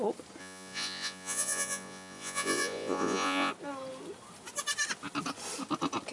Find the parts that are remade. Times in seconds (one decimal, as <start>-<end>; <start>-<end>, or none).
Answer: 0.4-3.5

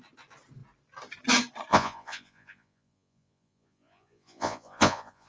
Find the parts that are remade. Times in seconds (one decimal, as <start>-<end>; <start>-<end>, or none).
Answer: 1.7-5.3

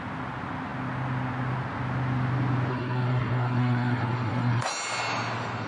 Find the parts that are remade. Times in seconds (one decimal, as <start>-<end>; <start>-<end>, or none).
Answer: 2.7-4.7

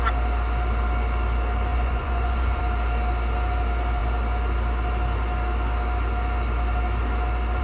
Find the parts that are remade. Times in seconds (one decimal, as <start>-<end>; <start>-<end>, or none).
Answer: 1.7-2.6

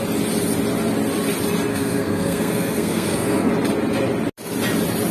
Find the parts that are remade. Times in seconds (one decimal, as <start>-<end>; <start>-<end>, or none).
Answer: 1.7-3.5

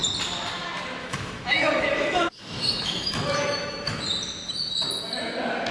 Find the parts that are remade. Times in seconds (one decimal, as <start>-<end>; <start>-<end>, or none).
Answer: 1.0-4.0

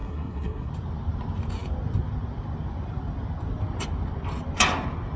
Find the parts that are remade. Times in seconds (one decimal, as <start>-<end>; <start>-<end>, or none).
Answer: 0.0-0.7

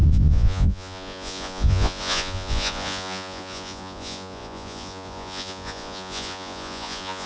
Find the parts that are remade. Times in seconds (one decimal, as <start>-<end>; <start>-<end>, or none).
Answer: 0.0-7.3